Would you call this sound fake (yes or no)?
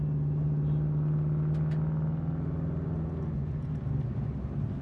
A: no